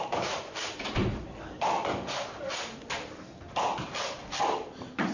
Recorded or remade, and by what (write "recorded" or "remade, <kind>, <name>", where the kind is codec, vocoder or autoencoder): recorded